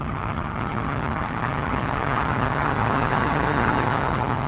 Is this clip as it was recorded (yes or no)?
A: no